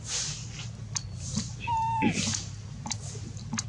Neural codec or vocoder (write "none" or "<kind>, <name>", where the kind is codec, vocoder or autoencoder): none